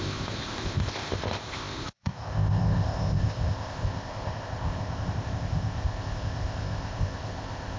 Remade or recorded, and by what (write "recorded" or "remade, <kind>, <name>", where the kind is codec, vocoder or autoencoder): remade, codec, ZipCodec